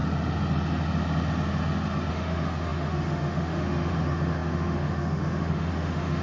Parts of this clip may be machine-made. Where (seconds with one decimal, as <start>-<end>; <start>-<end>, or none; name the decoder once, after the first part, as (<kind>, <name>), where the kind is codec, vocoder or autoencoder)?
2.1-6.2 (autoencoder, DAC-VAE)